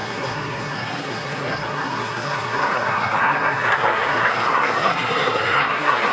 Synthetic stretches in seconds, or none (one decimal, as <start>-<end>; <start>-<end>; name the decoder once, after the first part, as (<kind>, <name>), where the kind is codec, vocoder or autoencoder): 0.0-6.1 (codec, SNAC)